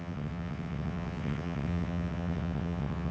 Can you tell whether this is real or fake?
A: fake